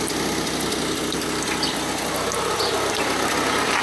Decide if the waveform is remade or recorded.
recorded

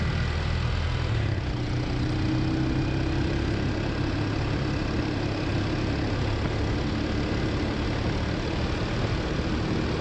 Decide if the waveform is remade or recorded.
recorded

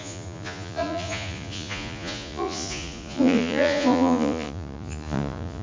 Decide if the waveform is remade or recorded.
remade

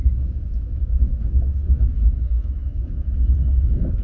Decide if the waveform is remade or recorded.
remade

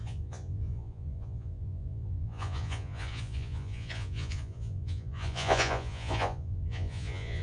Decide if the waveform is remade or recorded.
remade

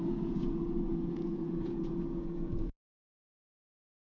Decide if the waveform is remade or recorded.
remade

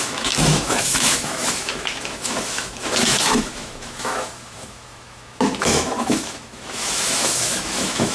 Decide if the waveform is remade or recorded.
remade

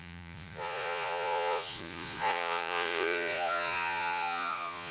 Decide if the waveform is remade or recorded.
remade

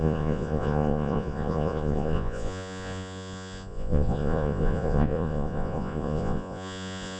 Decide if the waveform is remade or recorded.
remade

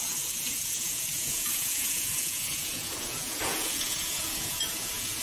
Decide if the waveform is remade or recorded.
remade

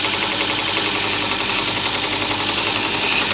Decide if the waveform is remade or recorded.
recorded